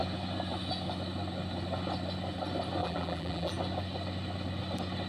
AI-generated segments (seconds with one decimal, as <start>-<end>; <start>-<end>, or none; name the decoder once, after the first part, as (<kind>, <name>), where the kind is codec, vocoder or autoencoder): 2.8-3.5 (vocoder, BigVGAN v2)